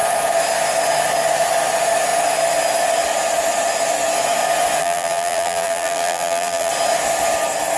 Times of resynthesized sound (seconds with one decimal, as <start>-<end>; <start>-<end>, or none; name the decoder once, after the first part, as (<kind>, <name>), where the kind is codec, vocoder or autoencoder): 4.8-6.7 (vocoder, BigVGAN v2)